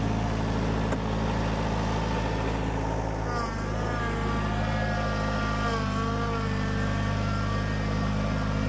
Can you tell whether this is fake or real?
real